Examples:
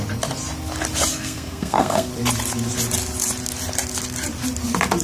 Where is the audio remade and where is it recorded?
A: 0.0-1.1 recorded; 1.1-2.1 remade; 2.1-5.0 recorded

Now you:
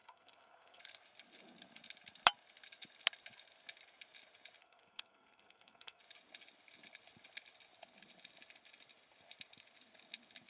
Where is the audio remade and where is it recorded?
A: 0.0-0.8 remade; 0.8-4.6 recorded; 4.6-6.0 remade; 6.0-10.5 recorded